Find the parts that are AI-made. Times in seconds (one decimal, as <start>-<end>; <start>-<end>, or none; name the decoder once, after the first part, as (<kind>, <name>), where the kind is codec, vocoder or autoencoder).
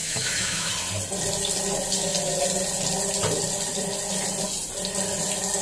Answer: 0.0-0.7 (autoencoder, DAC-VAE)